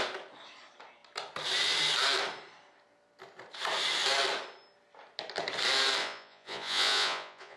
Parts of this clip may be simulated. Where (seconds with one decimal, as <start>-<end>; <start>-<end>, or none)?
6.0-7.6